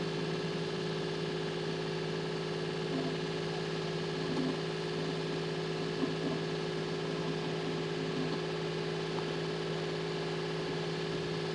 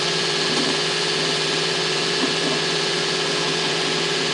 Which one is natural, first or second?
first